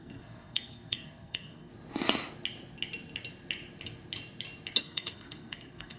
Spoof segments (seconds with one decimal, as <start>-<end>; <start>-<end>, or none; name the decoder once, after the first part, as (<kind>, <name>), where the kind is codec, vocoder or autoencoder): 0.0-1.7 (codec, SNAC); 4.8-6.0